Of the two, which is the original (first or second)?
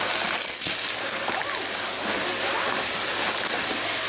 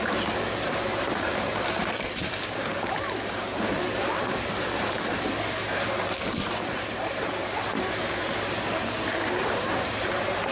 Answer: first